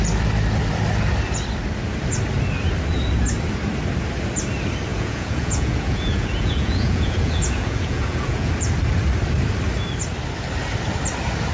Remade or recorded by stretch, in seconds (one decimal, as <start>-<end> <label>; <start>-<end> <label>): 0.0-4.9 recorded; 4.9-8.5 remade; 8.5-11.5 recorded